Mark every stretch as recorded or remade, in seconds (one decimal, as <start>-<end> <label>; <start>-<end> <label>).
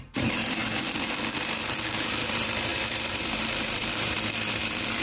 0.0-5.0 remade